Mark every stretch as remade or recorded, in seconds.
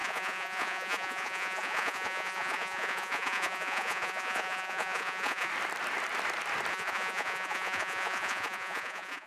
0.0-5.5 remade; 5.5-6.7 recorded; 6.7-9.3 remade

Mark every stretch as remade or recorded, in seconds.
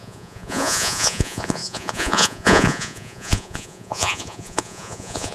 0.0-5.3 remade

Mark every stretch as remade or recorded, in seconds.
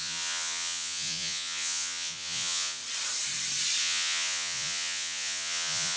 0.0-2.8 remade; 2.8-3.8 recorded; 3.8-6.0 remade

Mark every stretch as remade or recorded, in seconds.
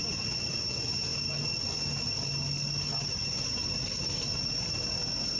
0.0-5.4 recorded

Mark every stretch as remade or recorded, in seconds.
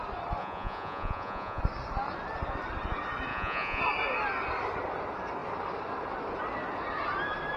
0.0-0.4 recorded; 0.4-1.6 remade; 1.6-3.3 recorded; 3.3-3.8 remade; 3.8-7.6 recorded